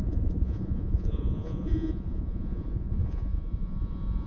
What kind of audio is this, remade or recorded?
remade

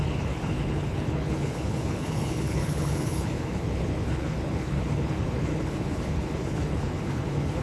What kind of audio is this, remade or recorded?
remade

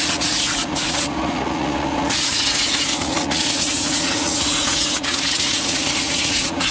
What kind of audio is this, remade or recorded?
remade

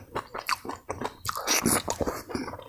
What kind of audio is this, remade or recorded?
recorded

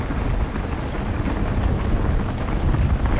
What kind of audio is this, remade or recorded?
recorded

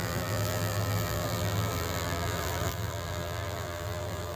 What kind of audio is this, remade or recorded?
remade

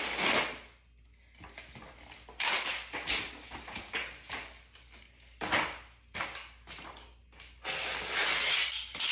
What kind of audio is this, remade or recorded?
recorded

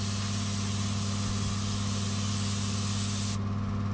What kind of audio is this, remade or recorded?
recorded